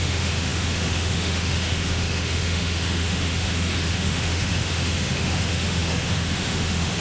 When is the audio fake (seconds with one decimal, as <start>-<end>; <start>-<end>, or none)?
0.0-7.0